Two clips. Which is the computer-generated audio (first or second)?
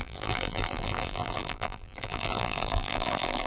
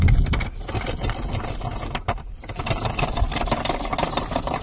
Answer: first